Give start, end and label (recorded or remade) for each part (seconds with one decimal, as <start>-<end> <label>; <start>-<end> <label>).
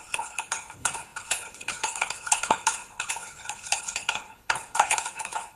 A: 0.0-5.6 remade